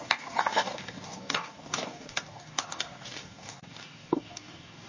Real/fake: fake